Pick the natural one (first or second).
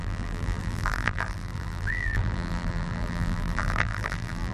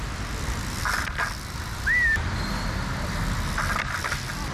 second